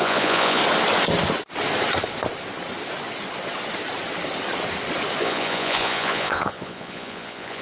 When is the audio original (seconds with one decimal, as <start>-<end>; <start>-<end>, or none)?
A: 0.6-5.2